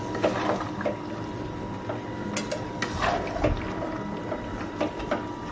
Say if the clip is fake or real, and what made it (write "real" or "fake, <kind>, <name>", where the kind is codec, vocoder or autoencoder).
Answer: real